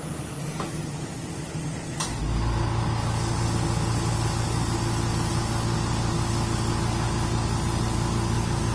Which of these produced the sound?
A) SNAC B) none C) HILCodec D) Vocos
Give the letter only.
B